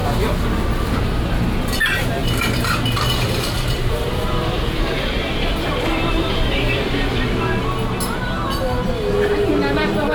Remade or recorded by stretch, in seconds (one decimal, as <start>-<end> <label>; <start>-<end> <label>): 0.0-2.2 recorded; 2.2-6.9 remade; 6.9-10.1 recorded